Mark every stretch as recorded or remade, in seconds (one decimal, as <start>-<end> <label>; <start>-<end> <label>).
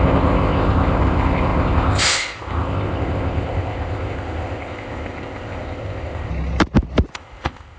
0.0-6.3 remade; 6.3-7.1 recorded; 7.1-7.8 remade